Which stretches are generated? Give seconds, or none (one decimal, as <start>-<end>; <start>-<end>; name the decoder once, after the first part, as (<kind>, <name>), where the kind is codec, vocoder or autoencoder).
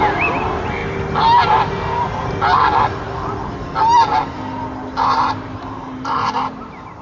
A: 0.0-0.8 (vocoder, BigVGAN v2); 5.0-7.0